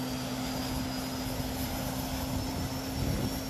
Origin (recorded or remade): recorded